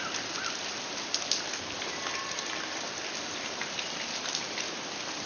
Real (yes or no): no